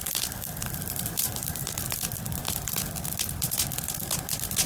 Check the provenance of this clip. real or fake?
real